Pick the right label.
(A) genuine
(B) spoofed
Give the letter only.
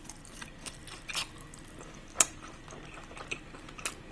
A